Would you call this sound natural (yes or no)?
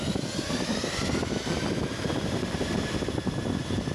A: yes